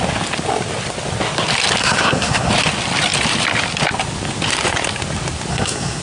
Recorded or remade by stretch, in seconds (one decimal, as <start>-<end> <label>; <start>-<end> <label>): 0.0-1.8 recorded; 1.8-2.5 remade; 2.5-5.5 recorded; 5.5-6.0 remade